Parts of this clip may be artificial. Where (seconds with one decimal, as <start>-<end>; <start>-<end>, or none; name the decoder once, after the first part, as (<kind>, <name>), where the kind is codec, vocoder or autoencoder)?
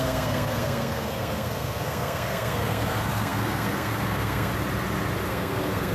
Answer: 0.0-4.5 (codec, SNAC); 5.3-5.9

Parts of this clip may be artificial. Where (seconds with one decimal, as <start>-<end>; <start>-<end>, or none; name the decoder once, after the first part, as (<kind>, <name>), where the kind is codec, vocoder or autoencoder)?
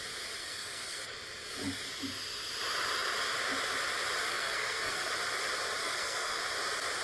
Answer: 0.4-1.0 (codec, SNAC); 4.3-5.1; 5.8-6.4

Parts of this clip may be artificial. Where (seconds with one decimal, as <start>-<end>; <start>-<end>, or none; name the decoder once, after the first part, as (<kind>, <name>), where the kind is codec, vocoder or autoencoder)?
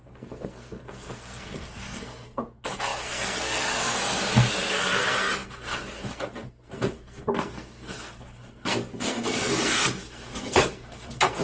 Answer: 0.0-11.4 (codec, SNAC)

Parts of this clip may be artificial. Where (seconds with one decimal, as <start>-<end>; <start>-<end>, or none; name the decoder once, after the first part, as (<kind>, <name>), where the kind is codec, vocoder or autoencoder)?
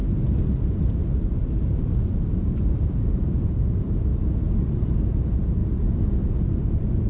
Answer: 0.0-4.1 (vocoder, BigVGAN v2); 4.6-5.6; 6.6-7.1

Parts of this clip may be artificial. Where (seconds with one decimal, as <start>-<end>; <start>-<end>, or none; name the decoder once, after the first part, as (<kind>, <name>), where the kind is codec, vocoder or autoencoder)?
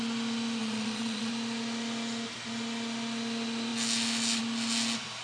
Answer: 0.6-1.3 (vocoder, Vocos)